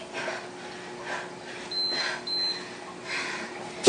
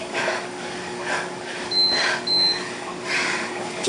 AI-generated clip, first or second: second